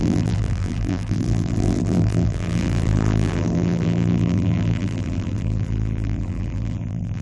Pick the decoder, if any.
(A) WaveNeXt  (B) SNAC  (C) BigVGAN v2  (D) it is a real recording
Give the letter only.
C